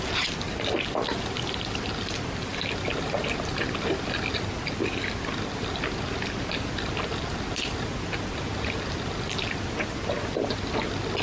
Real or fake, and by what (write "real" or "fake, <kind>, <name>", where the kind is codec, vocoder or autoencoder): real